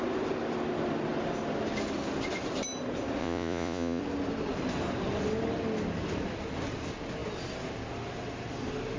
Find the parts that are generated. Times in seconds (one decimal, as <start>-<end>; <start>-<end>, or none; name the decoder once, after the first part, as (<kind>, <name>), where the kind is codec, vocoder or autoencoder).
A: 3.2-4.0 (vocoder, Vocos)